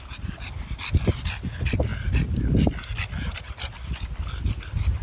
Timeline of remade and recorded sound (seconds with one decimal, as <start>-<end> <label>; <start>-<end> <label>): 0.0-5.0 recorded